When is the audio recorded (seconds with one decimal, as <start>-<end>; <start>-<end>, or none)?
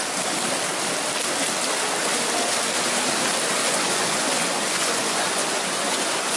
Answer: 0.0-3.6